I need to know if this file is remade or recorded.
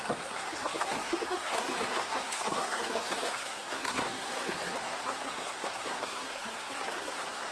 remade